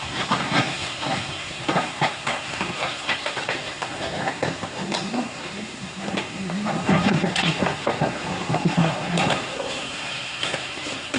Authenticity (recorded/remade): remade